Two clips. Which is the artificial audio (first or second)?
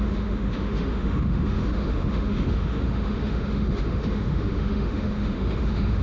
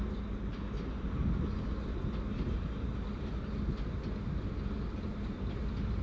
first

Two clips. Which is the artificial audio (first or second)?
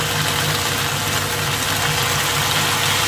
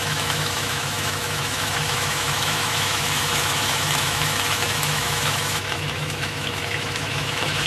second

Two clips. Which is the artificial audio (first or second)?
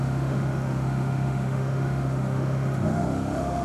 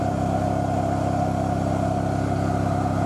first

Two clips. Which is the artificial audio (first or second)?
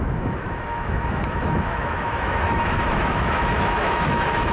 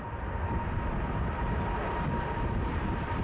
first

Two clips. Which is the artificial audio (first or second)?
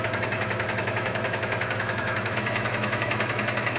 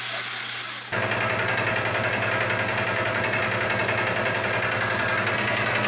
first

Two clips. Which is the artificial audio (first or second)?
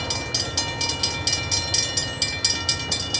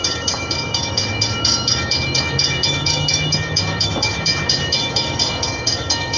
second